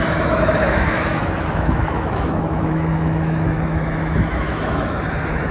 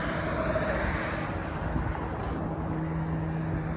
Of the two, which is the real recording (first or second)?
second